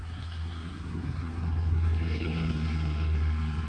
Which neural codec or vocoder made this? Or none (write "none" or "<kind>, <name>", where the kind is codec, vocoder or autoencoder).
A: codec, SNAC